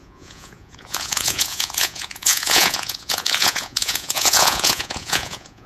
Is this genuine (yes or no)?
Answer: no